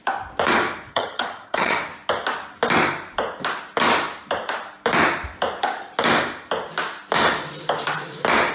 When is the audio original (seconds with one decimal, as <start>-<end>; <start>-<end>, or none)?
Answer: 0.0-0.9; 1.8-8.5